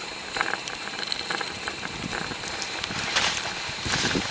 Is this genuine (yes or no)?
no